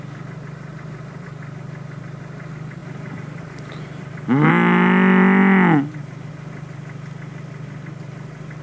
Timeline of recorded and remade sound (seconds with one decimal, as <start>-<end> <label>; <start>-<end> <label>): 0.0-2.8 recorded; 2.8-4.5 remade; 4.5-8.6 recorded